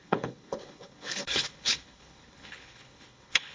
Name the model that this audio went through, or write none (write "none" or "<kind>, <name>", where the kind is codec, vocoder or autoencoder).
codec, HILCodec